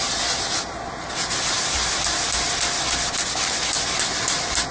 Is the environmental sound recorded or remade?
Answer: recorded